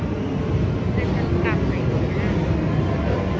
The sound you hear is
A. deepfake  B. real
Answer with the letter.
B